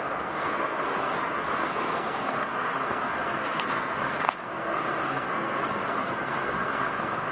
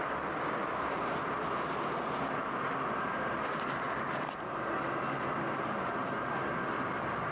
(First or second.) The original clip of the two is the second